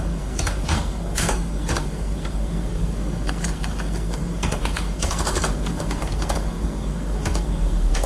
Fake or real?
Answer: fake